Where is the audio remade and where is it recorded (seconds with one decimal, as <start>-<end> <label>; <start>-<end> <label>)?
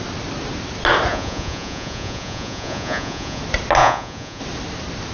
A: 0.0-1.1 recorded; 1.1-3.4 remade; 3.4-3.8 recorded; 3.8-4.4 remade; 4.4-5.1 recorded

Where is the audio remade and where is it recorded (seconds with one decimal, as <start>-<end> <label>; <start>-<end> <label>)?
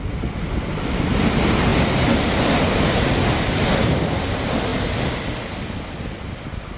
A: 0.0-6.8 recorded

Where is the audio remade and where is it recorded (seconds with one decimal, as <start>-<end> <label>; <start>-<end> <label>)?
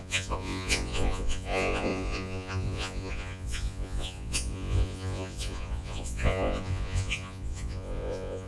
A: 0.0-8.5 remade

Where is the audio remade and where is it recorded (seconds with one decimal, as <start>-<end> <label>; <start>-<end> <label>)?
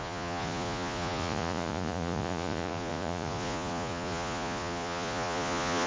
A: 0.0-5.9 remade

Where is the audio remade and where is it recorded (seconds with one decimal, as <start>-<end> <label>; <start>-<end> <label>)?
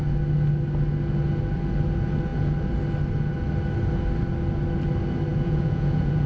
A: 0.0-5.3 recorded; 5.3-6.3 remade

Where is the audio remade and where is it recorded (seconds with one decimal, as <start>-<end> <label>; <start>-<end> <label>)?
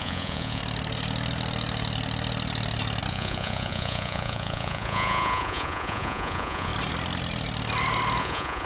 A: 0.0-0.6 remade; 0.6-3.1 recorded; 3.1-6.7 remade; 6.7-8.2 recorded; 8.2-8.7 remade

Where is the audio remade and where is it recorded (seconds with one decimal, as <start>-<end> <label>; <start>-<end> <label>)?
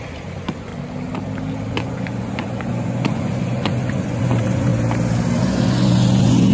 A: 0.0-0.7 remade; 0.7-1.7 recorded; 1.7-4.7 remade; 4.7-5.4 recorded; 5.4-6.5 remade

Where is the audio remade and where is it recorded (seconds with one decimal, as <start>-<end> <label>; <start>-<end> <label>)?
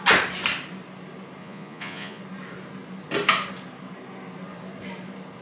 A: 0.0-1.4 recorded; 1.4-2.2 remade; 2.2-5.4 recorded